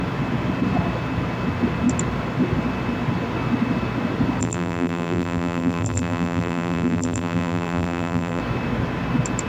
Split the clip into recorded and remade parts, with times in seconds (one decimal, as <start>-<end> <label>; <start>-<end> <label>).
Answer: 0.0-4.4 recorded; 4.4-8.4 remade; 8.4-9.5 recorded